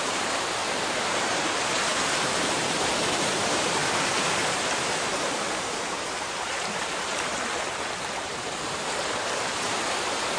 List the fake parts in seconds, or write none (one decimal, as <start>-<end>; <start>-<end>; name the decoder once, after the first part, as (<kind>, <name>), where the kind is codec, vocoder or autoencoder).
0.0-0.6 (vocoder, BigVGAN v2); 1.1-10.4